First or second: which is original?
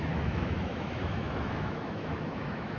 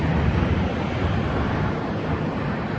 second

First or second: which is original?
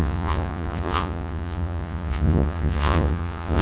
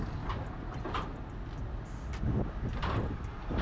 second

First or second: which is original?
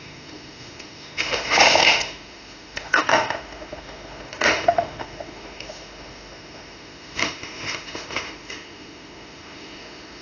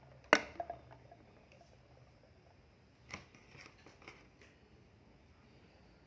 second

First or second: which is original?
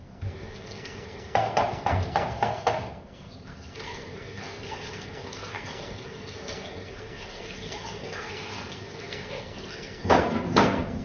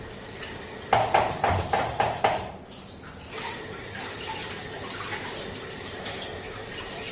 second